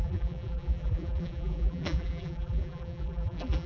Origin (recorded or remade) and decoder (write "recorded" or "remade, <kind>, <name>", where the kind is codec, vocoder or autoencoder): remade, vocoder, BigVGAN v2